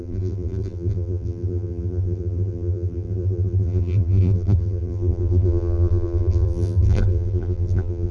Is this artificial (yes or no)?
yes